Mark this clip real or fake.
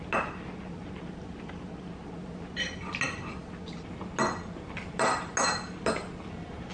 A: real